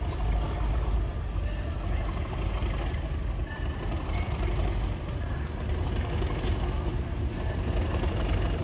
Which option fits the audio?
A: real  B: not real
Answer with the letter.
A